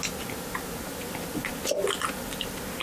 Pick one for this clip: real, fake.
real